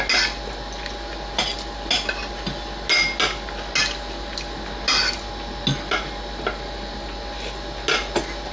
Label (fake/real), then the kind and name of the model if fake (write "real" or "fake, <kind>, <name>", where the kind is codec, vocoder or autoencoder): real